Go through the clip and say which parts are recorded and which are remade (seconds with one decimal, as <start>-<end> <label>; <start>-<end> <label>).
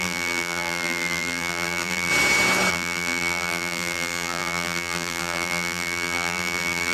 0.0-2.1 remade; 2.1-2.7 recorded; 2.7-6.9 remade